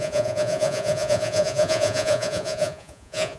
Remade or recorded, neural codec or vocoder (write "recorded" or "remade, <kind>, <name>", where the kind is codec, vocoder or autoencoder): remade, vocoder, Vocos